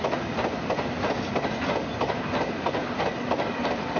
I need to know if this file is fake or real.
real